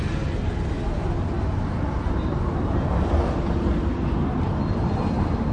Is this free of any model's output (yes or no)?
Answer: yes